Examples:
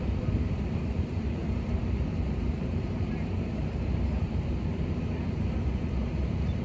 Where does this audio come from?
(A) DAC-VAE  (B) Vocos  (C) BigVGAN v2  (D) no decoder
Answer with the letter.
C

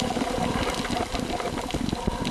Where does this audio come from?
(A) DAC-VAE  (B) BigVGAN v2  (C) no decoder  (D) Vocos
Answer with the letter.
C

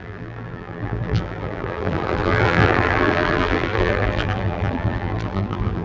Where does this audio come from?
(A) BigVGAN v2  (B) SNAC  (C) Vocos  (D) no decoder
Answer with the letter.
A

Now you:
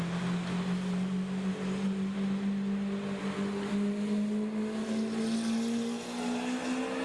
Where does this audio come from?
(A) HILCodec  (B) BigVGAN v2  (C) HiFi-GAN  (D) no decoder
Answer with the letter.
D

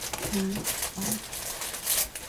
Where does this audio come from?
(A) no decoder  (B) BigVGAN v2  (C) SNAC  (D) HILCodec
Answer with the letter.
A